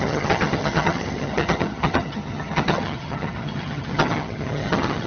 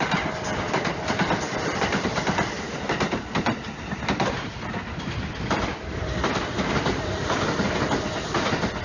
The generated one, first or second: first